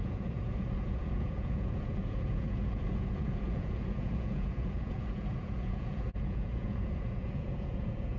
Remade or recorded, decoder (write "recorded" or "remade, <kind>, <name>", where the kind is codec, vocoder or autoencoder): remade, vocoder, Vocos